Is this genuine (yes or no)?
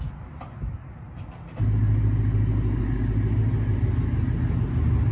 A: yes